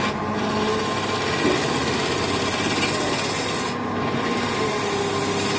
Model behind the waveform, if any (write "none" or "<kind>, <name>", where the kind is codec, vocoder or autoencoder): none